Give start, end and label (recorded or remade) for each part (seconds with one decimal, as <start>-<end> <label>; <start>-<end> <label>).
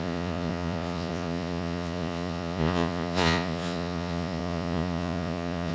0.0-5.7 remade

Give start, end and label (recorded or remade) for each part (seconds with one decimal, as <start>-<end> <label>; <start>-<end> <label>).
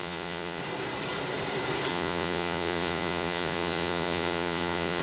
0.0-0.6 remade; 0.6-1.9 recorded; 1.9-5.0 remade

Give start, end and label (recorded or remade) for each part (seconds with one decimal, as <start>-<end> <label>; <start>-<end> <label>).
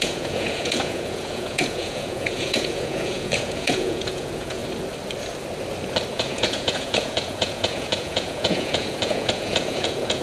0.0-4.6 remade; 4.6-6.1 recorded; 6.1-10.2 remade